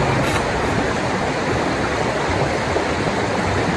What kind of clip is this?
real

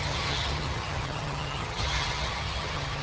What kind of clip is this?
fake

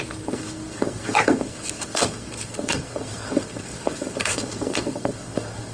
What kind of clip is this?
fake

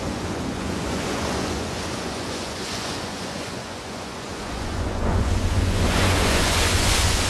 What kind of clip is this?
fake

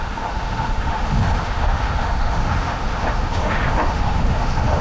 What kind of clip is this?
fake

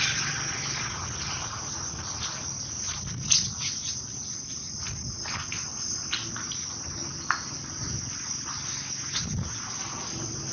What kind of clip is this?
real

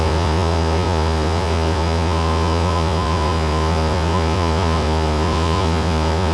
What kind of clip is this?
fake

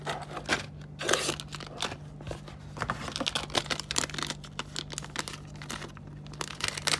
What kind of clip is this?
real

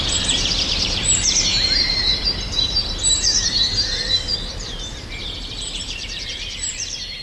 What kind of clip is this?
fake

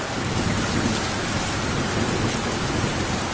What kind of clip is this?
real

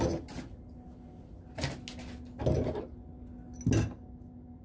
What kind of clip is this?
real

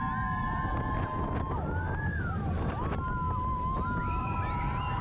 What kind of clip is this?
real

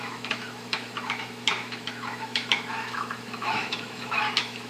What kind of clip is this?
fake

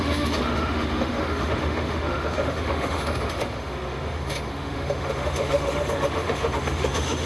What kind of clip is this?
fake